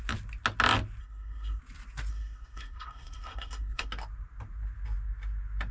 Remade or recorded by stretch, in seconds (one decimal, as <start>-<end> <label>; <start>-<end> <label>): 0.0-1.0 recorded; 1.0-1.6 remade; 1.6-2.1 recorded; 2.1-3.9 remade; 3.9-5.7 recorded